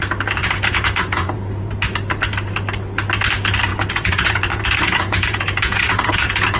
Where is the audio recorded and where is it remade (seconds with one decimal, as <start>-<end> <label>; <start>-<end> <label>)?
0.0-0.4 recorded; 0.4-1.7 remade; 1.7-3.7 recorded; 3.7-6.6 remade